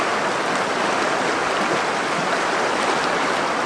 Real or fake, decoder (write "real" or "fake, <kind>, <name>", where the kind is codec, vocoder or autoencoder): real